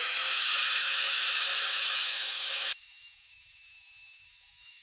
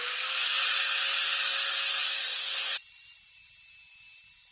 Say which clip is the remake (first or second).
first